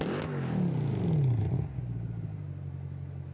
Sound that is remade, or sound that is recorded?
recorded